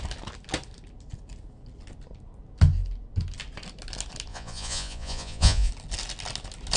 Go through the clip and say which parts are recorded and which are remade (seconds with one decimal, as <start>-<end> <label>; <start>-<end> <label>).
0.0-4.3 recorded; 4.3-5.7 remade; 5.7-6.8 recorded